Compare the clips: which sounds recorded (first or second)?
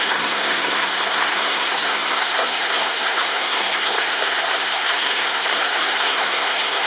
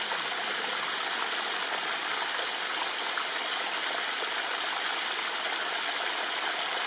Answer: second